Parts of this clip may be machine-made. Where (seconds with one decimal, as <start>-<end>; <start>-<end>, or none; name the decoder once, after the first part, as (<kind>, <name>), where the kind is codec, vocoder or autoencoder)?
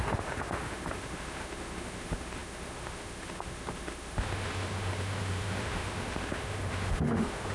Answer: 0.0-7.5 (autoencoder, DAC-VAE)